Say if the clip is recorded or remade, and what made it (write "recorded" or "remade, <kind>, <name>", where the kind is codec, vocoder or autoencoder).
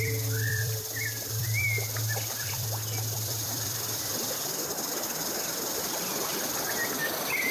remade, vocoder, BigVGAN v2